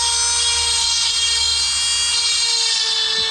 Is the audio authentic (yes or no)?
yes